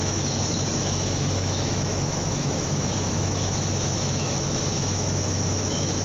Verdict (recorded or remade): remade